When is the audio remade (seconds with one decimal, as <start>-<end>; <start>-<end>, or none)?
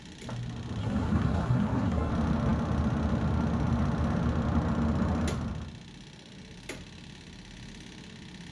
0.8-2.1